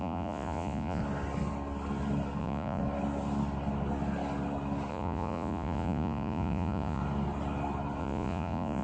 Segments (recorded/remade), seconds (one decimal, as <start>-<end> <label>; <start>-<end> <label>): 0.0-1.0 remade; 1.0-2.4 recorded; 2.4-2.8 remade; 2.8-4.9 recorded; 4.9-7.0 remade; 7.0-8.0 recorded; 8.0-8.8 remade